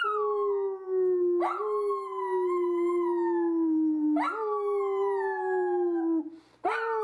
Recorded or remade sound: recorded